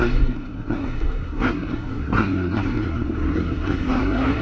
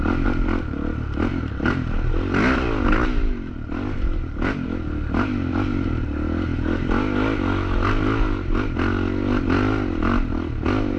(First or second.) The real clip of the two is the second